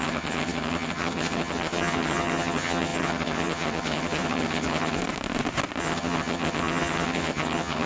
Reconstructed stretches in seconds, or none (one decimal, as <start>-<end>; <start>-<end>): 0.0-5.0; 5.8-7.9